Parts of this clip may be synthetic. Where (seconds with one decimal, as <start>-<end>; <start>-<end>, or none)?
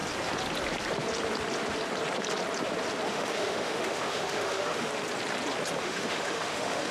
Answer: 3.1-4.9; 5.8-6.9